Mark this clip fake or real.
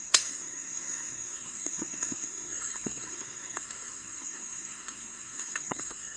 fake